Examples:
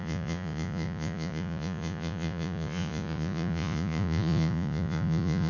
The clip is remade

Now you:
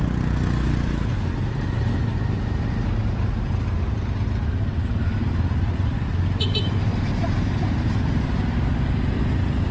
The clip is recorded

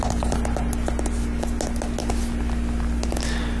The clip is recorded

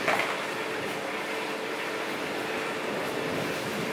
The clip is recorded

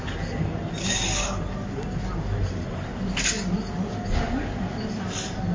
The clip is recorded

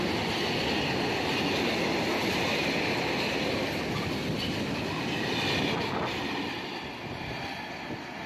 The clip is recorded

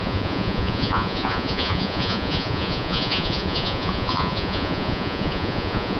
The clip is remade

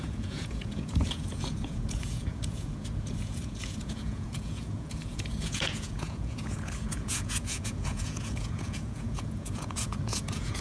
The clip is remade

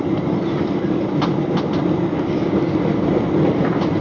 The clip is recorded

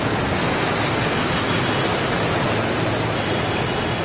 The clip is recorded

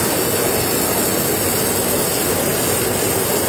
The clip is recorded